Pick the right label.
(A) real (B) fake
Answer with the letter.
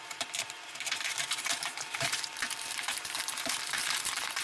B